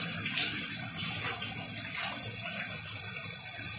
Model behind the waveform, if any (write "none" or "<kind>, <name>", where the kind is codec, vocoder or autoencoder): none